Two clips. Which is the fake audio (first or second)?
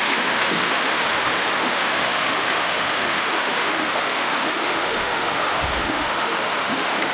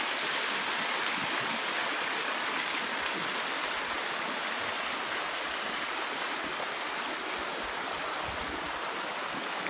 first